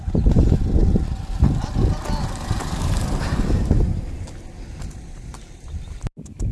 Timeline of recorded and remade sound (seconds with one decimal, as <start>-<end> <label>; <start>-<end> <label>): 0.0-6.5 recorded